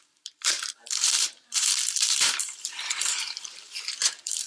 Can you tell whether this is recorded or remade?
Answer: remade